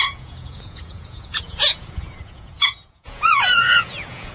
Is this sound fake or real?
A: fake